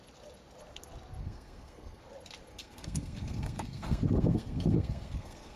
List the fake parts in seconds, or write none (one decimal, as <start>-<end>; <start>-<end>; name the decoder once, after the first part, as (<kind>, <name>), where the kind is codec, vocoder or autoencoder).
1.2-2.0 (codec, SNAC); 2.5-5.6